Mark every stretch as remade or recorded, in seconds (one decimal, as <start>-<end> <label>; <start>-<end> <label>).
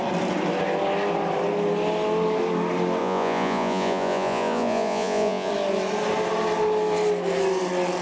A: 0.0-3.0 recorded; 3.0-5.5 remade; 5.5-8.0 recorded